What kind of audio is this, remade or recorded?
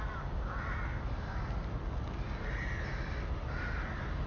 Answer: recorded